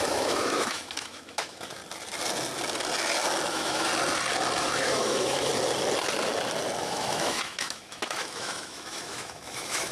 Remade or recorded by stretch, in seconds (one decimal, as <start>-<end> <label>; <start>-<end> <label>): 0.0-1.8 remade; 1.8-3.5 recorded; 3.5-3.9 remade; 3.9-4.6 recorded; 4.6-5.5 remade; 5.5-6.8 recorded; 6.8-9.9 remade